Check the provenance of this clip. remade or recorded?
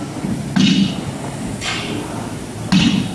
recorded